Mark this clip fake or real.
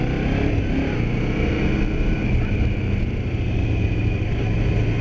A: real